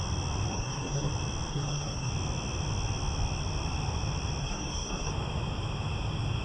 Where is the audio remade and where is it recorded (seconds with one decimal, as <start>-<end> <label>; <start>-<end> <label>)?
0.0-0.5 recorded; 0.5-1.1 remade; 1.1-1.5 recorded; 1.5-2.1 remade; 2.1-4.4 recorded; 4.4-5.1 remade; 5.1-6.4 recorded